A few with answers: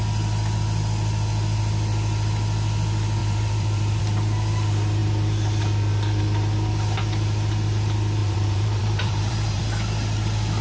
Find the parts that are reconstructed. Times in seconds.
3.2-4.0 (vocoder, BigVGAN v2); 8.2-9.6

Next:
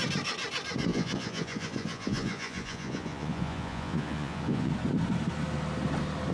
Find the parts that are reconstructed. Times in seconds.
0.9-4.7 (vocoder, Vocos)

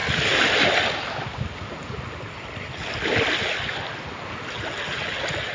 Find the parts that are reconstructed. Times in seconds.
none

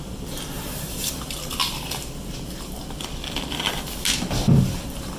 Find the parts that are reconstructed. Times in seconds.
0.0-5.2 (vocoder, BigVGAN v2)

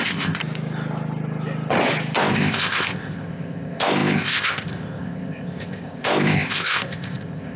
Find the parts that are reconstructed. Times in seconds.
0.0-0.4 (codec, ZipCodec); 2.2-7.6

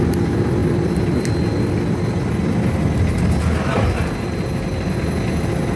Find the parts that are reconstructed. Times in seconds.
none